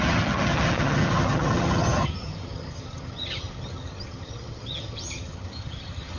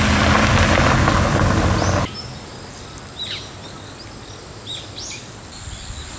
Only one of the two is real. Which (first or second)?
second